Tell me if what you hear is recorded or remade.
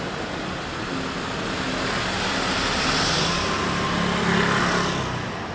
recorded